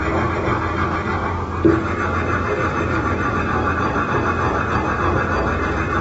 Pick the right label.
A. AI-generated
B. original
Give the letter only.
B